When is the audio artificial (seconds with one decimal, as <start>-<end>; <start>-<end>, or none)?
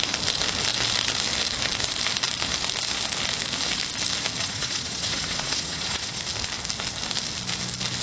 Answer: 4.4-6.2